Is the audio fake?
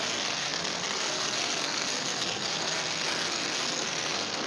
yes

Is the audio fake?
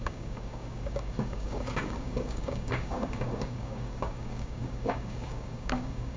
yes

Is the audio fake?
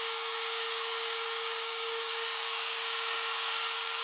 yes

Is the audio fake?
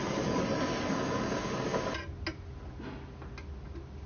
no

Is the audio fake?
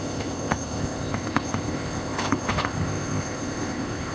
yes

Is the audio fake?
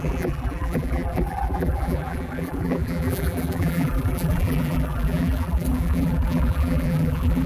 yes